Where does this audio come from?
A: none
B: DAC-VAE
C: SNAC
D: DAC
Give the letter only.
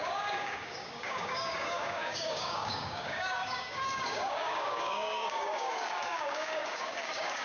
D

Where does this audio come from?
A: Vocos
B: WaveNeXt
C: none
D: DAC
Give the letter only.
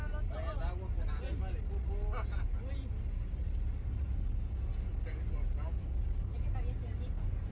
C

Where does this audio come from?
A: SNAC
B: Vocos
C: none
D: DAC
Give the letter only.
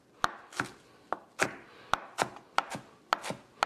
C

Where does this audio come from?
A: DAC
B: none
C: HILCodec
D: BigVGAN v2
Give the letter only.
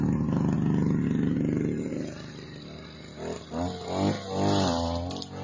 B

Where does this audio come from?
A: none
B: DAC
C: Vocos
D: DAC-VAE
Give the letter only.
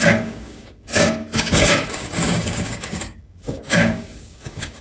B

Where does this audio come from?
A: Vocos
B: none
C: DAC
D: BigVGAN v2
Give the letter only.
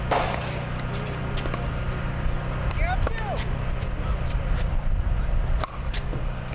B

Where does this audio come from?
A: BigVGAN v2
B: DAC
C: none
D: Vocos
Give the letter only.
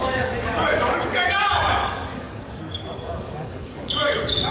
B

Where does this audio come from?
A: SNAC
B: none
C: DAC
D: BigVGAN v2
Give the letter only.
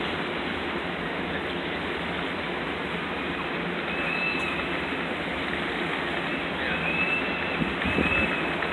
B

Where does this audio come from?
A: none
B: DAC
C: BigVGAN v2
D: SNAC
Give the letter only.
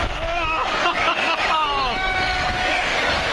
B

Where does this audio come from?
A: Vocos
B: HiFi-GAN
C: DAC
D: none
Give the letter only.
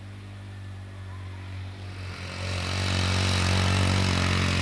D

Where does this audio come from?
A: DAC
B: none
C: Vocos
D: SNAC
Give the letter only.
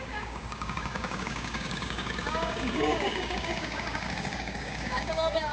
A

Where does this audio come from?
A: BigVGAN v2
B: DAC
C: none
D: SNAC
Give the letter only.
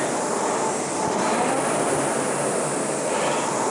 C